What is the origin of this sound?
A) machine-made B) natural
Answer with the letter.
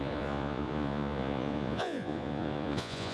A